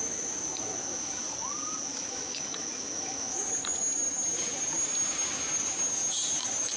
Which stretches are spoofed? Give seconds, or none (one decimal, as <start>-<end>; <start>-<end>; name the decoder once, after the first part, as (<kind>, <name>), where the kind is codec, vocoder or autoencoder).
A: 0.0-1.2 (autoencoder, DAC-VAE); 1.9-3.5